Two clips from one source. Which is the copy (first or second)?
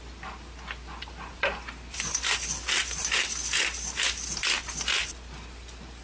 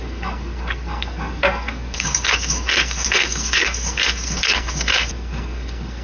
second